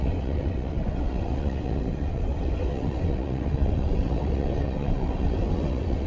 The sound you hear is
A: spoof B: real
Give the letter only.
A